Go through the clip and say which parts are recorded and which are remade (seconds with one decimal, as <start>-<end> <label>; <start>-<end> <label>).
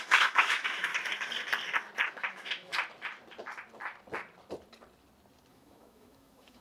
0.0-0.9 remade; 0.9-2.1 recorded; 2.1-2.7 remade; 2.7-5.5 recorded; 5.5-6.6 remade